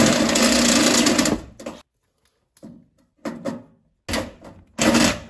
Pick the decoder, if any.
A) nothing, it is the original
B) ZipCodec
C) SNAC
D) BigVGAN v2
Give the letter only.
A